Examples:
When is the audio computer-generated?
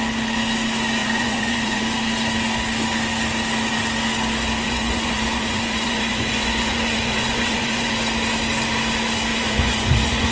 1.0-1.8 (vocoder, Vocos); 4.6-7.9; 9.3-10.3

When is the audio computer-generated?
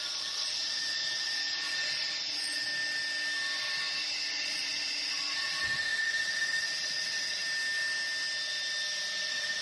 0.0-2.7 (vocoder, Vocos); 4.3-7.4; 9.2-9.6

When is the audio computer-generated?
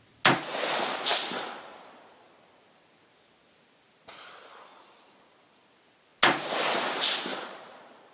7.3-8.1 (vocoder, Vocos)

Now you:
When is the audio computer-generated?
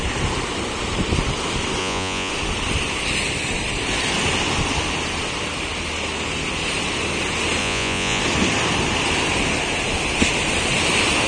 1.8-2.3 (vocoder, Vocos); 7.6-8.2